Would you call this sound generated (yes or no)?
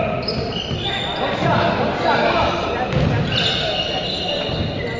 no